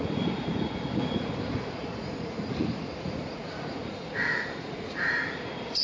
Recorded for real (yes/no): no